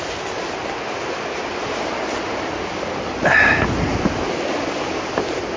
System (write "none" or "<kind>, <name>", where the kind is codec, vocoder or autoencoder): none